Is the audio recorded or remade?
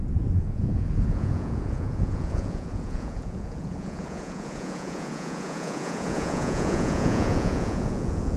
remade